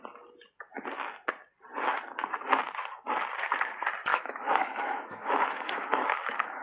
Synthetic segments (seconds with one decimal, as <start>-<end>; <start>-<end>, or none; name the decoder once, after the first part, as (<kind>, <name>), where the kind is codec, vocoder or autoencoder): 4.1-6.6 (autoencoder, DAC-VAE)